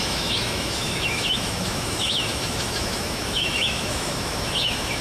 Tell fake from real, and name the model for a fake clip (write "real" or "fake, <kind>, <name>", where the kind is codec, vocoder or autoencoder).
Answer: fake, autoencoder, DAC-VAE